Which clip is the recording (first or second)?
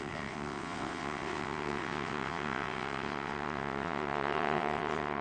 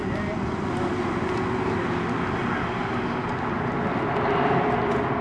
second